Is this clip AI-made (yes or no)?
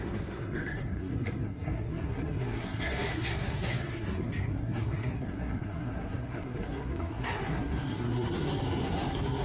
yes